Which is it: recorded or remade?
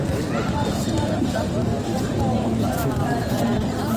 recorded